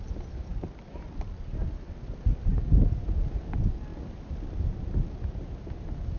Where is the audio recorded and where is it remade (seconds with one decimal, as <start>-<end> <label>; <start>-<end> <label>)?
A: 0.0-6.2 recorded